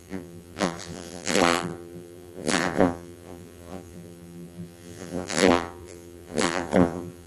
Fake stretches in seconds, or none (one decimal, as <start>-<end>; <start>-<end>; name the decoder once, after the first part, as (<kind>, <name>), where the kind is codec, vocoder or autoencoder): 0.0-7.3 (vocoder, BigVGAN v2)